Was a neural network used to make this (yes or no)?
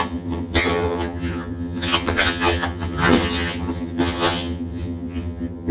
yes